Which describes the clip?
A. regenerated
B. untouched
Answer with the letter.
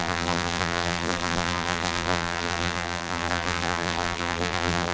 A